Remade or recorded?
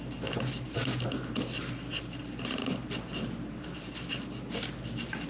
recorded